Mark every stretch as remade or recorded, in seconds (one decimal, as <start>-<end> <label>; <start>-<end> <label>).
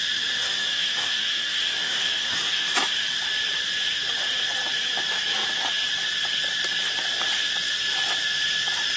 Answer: 0.0-0.4 recorded; 0.4-2.7 remade; 2.7-9.0 recorded